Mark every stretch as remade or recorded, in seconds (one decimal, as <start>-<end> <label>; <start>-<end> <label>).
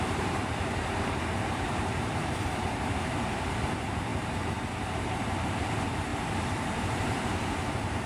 0.0-4.1 remade; 4.1-5.1 recorded; 5.1-6.1 remade; 6.1-6.6 recorded; 6.6-8.1 remade